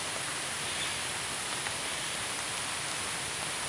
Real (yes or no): yes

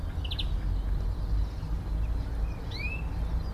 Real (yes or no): yes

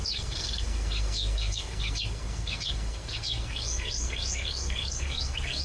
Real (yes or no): no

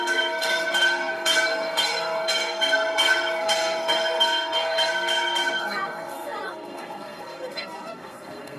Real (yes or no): no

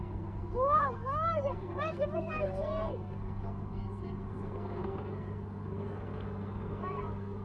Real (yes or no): no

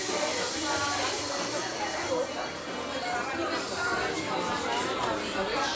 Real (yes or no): yes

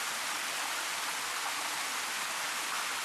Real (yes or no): yes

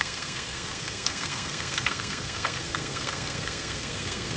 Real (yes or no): no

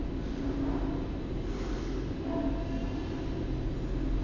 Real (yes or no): yes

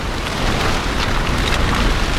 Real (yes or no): yes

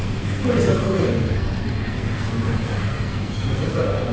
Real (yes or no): no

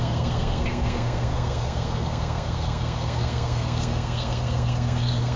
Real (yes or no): no